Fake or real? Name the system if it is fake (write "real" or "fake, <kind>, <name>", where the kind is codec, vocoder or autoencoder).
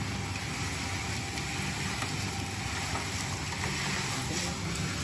real